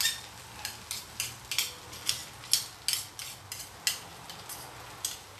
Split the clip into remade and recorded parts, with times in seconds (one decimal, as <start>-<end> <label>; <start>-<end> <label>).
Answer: 0.0-5.4 recorded